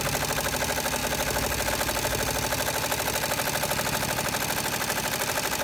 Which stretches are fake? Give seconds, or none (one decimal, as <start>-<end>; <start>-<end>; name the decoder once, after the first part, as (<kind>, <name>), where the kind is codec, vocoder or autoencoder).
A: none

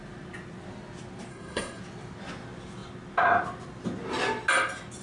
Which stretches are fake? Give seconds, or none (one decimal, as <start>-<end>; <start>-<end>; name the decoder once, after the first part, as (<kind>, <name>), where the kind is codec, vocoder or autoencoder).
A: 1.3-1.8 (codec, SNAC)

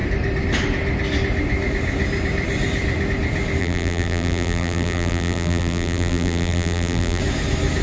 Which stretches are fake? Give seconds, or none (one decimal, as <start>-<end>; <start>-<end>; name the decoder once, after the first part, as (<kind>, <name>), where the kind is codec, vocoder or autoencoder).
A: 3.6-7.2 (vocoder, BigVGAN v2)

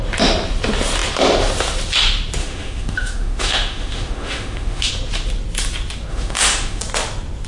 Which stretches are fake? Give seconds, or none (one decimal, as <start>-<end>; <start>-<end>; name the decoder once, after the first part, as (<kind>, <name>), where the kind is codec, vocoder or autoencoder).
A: 2.4-4.9 (autoencoder, DAC-VAE); 6.1-6.8